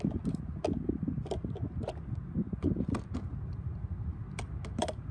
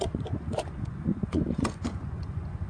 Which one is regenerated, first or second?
second